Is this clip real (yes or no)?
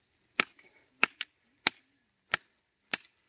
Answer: yes